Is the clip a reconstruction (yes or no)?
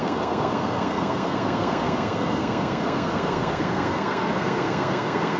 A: yes